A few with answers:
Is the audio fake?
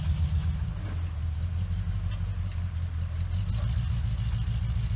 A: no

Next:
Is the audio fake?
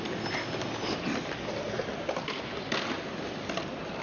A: no